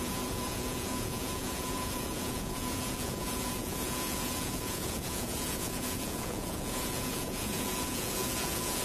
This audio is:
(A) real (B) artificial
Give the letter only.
B